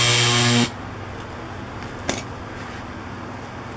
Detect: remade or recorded recorded